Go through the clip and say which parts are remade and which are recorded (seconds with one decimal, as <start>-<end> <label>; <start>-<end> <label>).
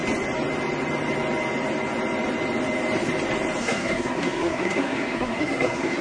0.0-3.6 recorded; 3.6-6.0 remade